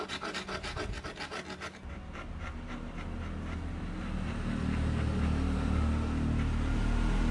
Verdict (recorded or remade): recorded